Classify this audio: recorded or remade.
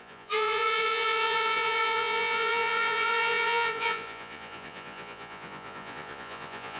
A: remade